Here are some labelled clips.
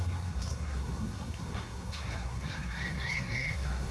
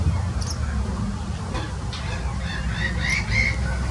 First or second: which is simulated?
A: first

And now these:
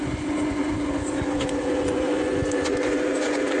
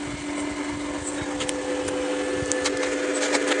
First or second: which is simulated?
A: first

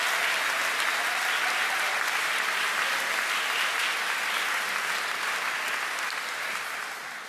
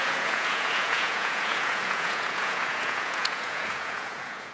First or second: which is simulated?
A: second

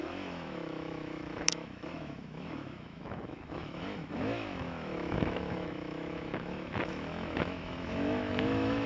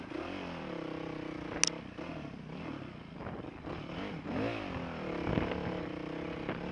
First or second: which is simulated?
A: first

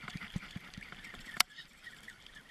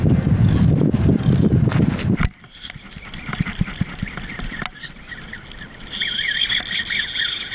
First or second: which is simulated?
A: first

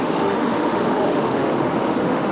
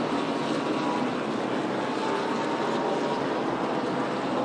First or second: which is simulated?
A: first